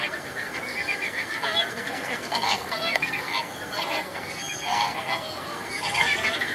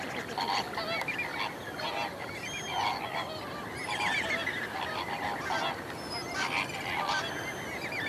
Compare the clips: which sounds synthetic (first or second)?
first